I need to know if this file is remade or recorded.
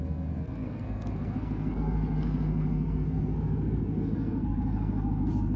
remade